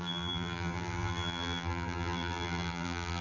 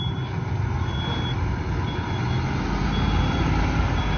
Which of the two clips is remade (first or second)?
first